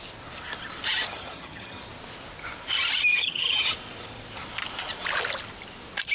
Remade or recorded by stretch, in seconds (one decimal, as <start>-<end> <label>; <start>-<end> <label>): 0.0-1.1 recorded; 1.1-1.8 remade; 1.8-3.1 recorded; 3.1-3.7 remade; 3.7-6.1 recorded